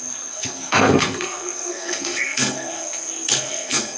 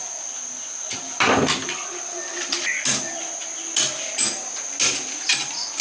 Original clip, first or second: second